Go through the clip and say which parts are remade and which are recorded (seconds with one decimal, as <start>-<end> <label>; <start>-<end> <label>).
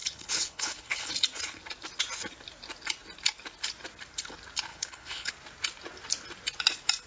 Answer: 0.0-1.1 remade; 1.1-4.7 recorded; 4.7-5.3 remade; 5.3-7.1 recorded